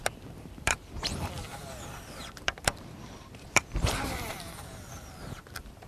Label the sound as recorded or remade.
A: remade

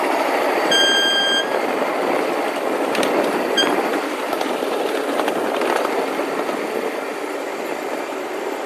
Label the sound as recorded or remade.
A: recorded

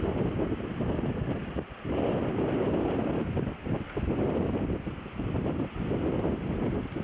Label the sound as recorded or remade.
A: recorded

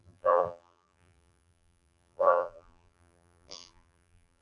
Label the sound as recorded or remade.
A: remade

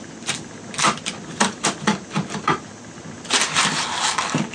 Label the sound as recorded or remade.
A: recorded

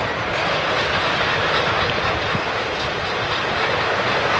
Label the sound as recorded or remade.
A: recorded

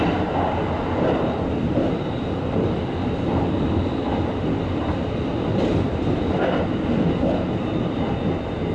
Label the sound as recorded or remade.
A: remade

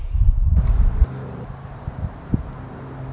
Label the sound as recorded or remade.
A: remade